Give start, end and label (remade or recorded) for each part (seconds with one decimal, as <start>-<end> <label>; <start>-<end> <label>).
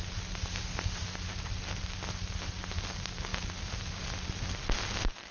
0.0-5.3 recorded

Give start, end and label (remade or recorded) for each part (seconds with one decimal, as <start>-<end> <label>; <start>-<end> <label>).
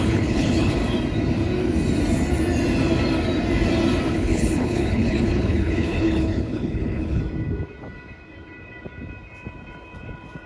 0.0-0.8 remade; 0.8-4.1 recorded; 4.1-7.2 remade; 7.2-10.5 recorded